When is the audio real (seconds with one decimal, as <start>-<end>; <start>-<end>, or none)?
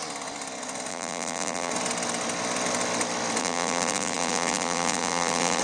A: 0.0-0.9; 1.7-3.4